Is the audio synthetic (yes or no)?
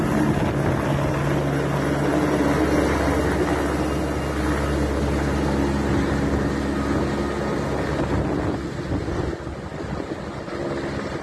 no